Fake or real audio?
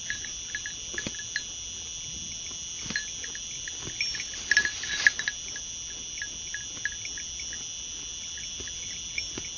real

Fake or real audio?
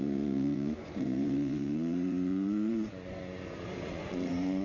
fake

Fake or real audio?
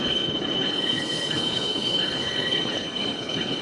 fake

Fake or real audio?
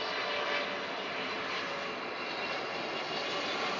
real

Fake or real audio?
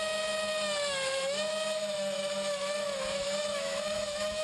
fake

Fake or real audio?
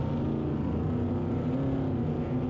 real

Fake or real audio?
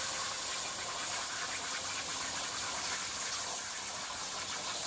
real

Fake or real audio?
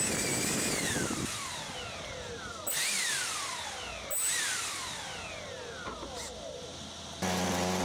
real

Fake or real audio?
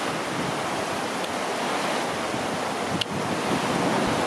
real